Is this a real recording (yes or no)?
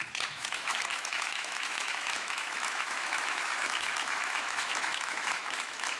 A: no